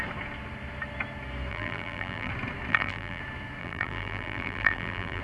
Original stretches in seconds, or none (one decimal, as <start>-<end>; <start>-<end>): 0.0-1.5; 2.3-2.7; 3.2-3.6